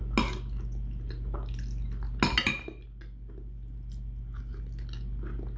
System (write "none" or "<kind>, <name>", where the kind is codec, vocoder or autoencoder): none